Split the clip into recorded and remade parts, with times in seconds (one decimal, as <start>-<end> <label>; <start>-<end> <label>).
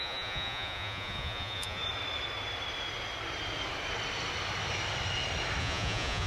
0.0-1.8 remade; 1.8-5.6 recorded; 5.6-6.3 remade